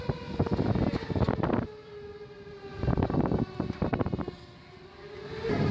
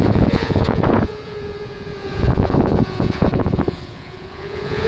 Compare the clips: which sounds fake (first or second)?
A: second